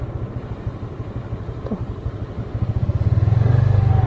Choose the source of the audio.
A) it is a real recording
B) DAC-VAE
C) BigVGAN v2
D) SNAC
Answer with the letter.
A